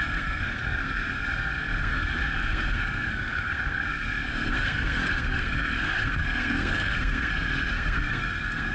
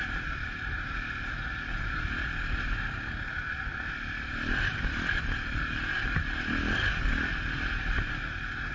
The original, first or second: second